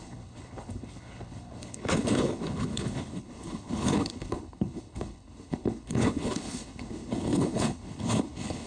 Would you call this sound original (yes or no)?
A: no